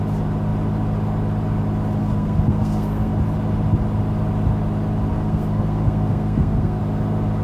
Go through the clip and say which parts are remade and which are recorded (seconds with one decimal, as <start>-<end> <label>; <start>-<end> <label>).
0.0-2.0 recorded; 2.0-3.1 remade; 3.1-5.1 recorded; 5.1-6.8 remade; 6.8-7.4 recorded